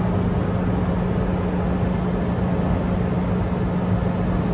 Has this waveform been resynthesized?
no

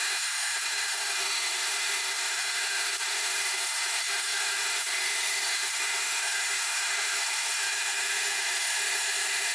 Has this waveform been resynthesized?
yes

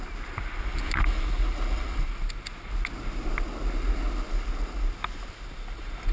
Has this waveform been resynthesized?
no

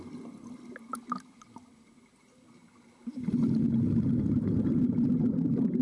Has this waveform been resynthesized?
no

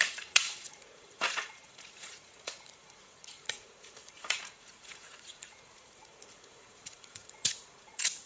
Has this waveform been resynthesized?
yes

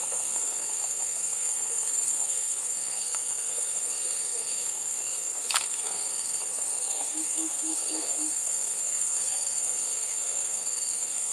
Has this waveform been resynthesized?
yes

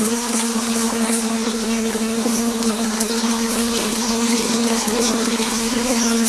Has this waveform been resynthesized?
yes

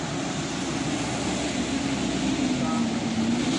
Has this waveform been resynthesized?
no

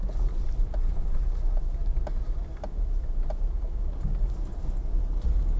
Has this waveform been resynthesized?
no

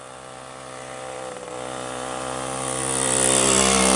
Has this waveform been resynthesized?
no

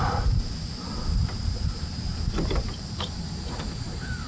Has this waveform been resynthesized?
yes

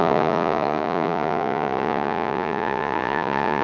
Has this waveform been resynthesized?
yes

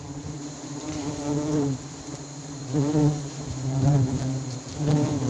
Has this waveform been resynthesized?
yes